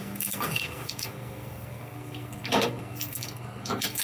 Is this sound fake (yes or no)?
yes